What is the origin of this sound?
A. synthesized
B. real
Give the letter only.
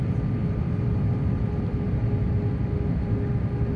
B